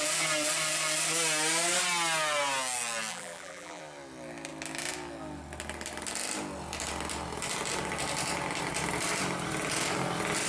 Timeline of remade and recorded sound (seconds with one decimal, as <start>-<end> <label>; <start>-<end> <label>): 0.0-3.1 recorded; 3.1-3.8 remade; 3.8-10.5 recorded